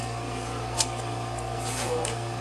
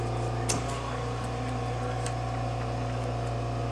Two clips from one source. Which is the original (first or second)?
second